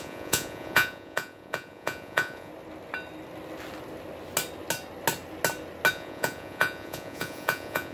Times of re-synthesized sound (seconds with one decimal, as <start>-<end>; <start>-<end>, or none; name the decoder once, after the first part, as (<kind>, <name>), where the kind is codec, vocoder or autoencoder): 0.0-2.5 (vocoder, Vocos); 5.9-7.9